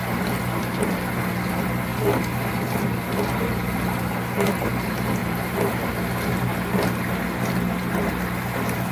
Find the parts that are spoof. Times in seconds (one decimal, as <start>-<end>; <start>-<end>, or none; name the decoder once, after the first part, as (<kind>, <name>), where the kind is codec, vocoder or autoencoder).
5.2-5.8 (vocoder, BigVGAN v2)